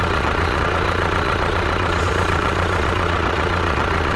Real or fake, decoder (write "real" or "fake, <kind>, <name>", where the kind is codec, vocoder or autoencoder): fake, vocoder, Vocos